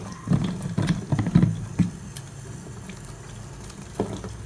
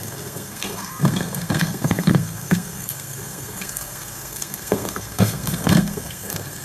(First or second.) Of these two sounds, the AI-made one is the second